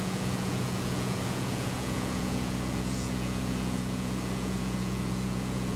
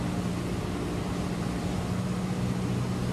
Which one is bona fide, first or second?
second